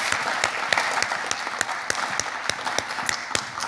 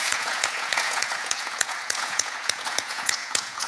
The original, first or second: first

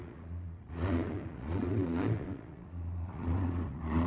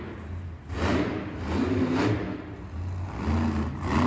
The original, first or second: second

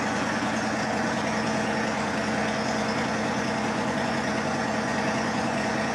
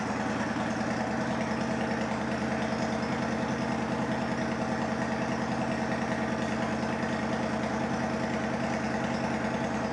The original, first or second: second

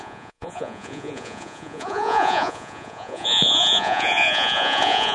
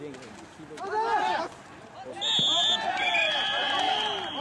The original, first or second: second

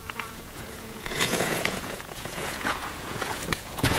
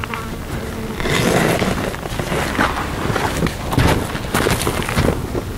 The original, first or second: second